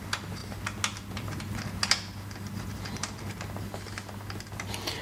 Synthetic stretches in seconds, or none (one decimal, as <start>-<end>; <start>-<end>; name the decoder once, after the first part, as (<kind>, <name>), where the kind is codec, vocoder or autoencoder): none